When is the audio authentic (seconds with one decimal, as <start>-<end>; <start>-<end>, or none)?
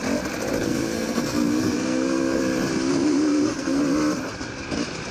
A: 0.0-0.6; 2.4-2.9; 3.8-5.1